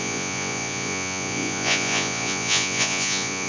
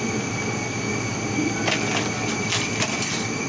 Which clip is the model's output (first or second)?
first